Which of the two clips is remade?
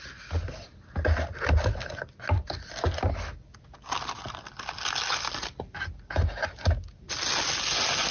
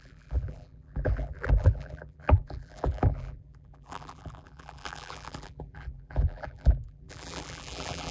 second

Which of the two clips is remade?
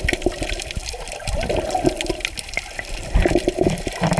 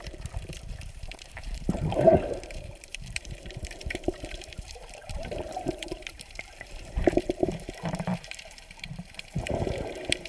second